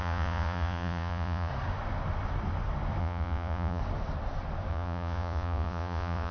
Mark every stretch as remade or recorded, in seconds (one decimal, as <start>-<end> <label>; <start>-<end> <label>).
0.0-1.5 remade; 1.5-3.0 recorded; 3.0-3.8 remade; 3.8-4.7 recorded; 4.7-6.3 remade